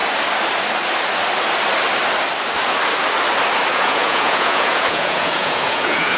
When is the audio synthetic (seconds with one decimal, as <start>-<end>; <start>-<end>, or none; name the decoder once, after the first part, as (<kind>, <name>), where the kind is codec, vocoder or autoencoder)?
3.7-6.2 (vocoder, Vocos)